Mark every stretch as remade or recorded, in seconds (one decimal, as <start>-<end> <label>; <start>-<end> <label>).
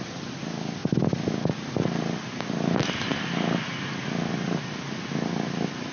0.0-5.9 recorded